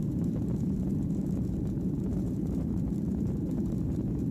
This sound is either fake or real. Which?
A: fake